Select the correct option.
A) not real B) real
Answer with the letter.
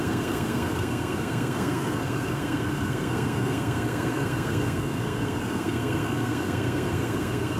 A